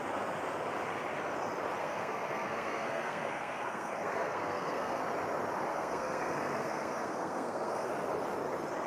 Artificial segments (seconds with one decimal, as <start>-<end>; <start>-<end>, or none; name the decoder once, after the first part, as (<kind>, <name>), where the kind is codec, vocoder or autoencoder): 1.8-5.0 (codec, SNAC); 5.7-7.9